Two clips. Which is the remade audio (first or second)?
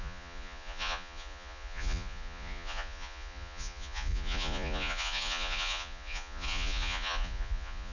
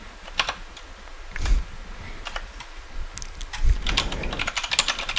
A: first